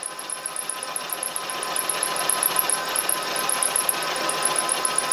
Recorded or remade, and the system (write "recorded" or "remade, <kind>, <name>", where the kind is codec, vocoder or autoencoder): recorded